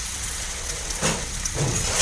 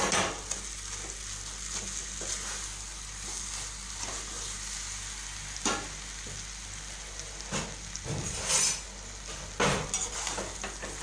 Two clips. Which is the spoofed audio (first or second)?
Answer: first